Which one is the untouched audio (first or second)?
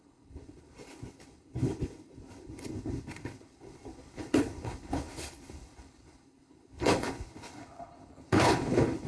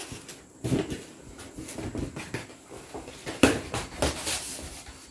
second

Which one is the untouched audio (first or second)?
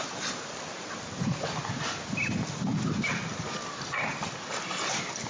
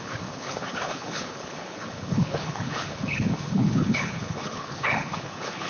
first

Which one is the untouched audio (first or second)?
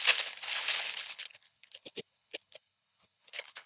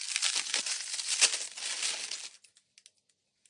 second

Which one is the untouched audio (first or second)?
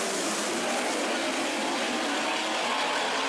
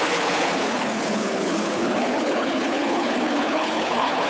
first